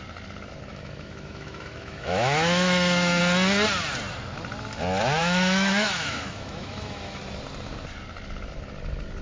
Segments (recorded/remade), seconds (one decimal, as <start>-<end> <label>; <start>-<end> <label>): 0.0-0.7 recorded; 0.7-3.2 remade; 3.2-5.2 recorded; 5.2-7.2 remade; 7.2-9.2 recorded